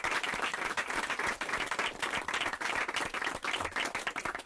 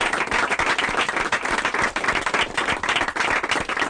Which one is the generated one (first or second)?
first